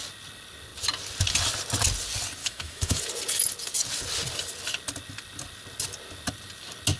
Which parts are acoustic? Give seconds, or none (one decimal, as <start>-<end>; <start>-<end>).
0.0-2.4; 3.0-7.0